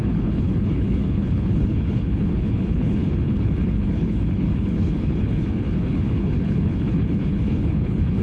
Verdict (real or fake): fake